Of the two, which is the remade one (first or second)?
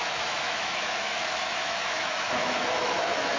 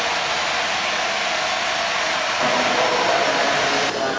first